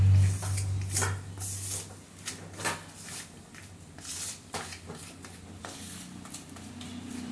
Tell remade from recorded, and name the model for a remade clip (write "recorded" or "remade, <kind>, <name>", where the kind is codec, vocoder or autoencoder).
recorded